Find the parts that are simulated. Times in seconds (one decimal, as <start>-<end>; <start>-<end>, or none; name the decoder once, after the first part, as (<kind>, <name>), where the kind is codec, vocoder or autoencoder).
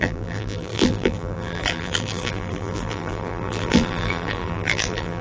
0.0-5.2 (vocoder, BigVGAN v2)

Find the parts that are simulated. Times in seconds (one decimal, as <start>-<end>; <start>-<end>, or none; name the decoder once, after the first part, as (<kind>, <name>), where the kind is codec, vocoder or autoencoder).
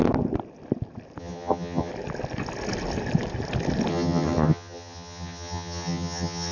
1.2-1.9 (vocoder, HiFi-GAN); 3.9-6.5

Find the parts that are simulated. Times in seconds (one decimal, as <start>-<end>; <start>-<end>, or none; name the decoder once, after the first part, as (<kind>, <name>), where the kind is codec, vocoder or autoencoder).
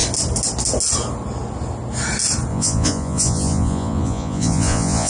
2.5-5.1 (vocoder, Vocos)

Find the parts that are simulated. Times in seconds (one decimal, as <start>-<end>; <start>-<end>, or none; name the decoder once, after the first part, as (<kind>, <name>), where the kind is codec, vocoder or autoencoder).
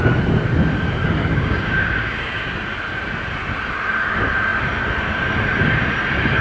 1.2-2.5 (codec, DAC)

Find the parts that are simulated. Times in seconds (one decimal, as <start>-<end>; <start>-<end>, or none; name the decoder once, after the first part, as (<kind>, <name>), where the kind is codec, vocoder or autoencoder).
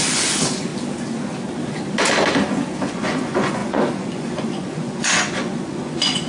0.0-0.7 (vocoder, Vocos); 2.9-6.3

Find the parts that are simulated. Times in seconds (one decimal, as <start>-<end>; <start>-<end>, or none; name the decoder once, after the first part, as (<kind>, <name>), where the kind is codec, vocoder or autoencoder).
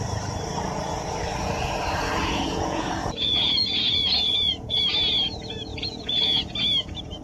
1.3-4.8 (vocoder, Vocos); 5.7-6.5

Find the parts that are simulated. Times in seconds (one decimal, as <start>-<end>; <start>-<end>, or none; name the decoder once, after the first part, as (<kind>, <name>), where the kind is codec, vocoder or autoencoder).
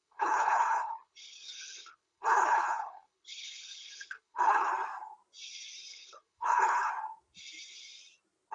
0.0-4.7 (codec, HILCodec); 5.9-6.9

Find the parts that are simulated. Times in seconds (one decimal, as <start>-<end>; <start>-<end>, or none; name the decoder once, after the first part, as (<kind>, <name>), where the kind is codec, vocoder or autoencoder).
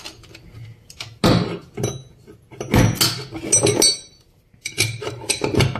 0.0-0.6 (vocoder, BigVGAN v2); 4.1-5.8